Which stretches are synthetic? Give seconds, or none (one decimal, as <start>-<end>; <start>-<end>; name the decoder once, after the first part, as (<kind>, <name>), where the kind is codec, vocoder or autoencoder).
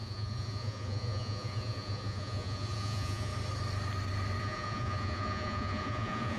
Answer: 0.0-3.3 (vocoder, Vocos); 4.4-6.4